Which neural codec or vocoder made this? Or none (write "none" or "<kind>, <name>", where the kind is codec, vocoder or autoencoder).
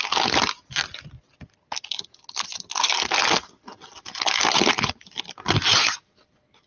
none